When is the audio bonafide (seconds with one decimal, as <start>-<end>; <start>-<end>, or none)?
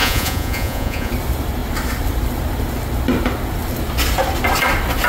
1.1-5.1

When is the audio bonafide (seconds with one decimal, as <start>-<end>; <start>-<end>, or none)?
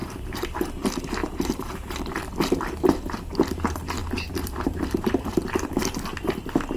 0.7-1.2; 1.9-4.0; 5.1-6.8